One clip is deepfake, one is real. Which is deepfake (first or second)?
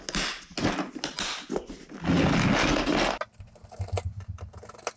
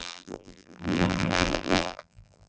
second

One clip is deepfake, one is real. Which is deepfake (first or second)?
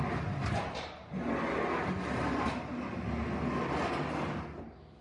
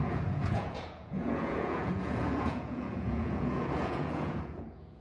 second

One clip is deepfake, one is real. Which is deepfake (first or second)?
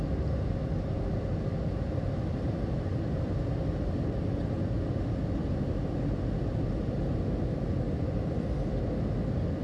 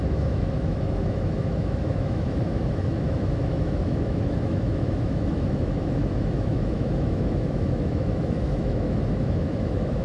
second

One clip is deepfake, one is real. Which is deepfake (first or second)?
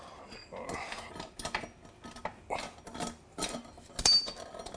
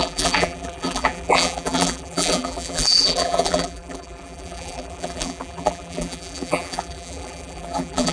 second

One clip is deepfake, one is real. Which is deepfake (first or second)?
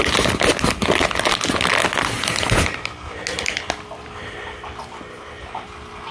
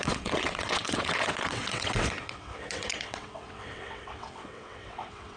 second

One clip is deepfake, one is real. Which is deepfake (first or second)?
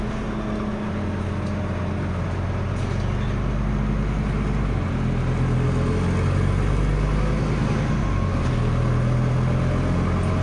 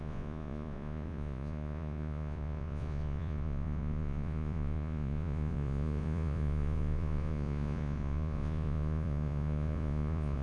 second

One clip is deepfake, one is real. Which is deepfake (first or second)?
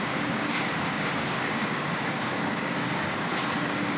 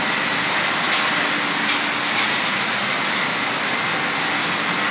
first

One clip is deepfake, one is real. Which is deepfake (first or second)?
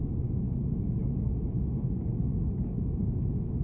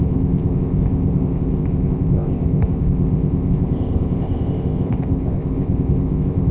second